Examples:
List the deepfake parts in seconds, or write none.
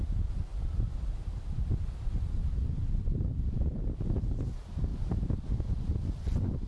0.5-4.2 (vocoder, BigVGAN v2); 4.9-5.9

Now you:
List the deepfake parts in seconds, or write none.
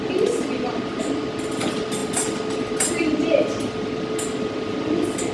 none